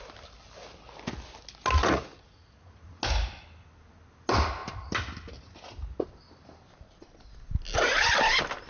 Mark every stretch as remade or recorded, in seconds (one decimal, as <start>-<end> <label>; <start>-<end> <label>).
0.0-1.8 recorded; 1.8-3.0 remade; 3.0-8.7 recorded